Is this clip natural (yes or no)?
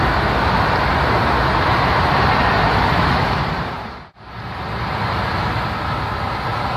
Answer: yes